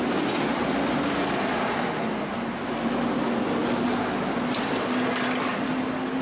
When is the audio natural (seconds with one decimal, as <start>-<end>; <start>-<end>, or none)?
0.0-6.2